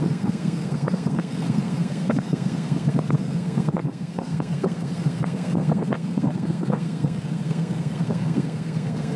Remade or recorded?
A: remade